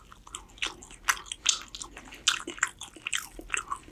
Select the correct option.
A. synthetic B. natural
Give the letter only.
B